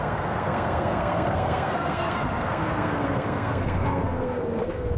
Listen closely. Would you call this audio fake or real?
fake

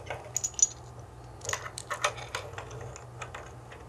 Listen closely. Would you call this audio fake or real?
real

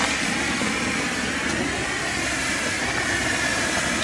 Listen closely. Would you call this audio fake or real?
real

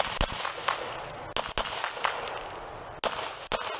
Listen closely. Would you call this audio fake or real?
real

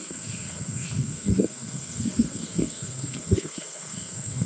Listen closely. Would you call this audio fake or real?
fake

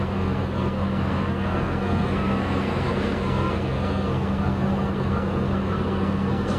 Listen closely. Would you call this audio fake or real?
fake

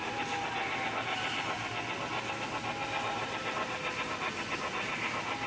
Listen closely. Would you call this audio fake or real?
real